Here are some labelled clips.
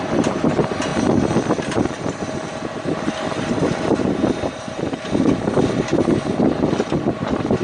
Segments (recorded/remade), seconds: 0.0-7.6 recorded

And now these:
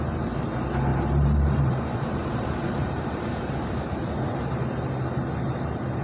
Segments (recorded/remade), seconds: 0.0-0.9 recorded; 0.9-4.5 remade; 4.5-6.0 recorded

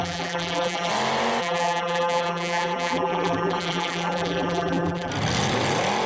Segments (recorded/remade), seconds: 0.0-0.9 remade; 0.9-1.4 recorded; 1.4-5.1 remade; 5.1-6.1 recorded

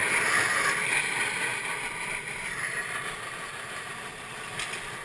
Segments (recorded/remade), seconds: 0.0-1.5 recorded; 1.5-3.8 remade; 3.8-5.0 recorded